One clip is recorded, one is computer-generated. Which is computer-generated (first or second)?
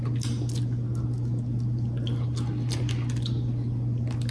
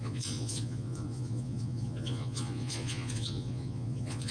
second